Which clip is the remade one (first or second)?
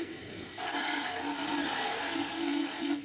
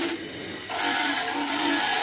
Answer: first